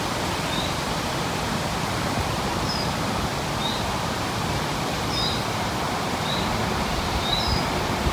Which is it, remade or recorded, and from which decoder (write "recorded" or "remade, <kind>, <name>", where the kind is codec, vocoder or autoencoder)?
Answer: remade, vocoder, BigVGAN v2